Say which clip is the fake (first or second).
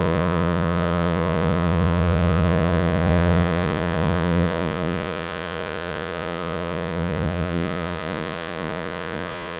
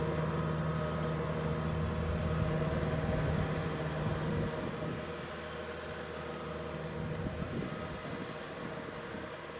first